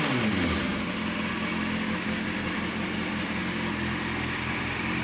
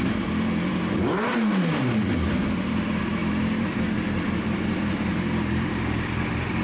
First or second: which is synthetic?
second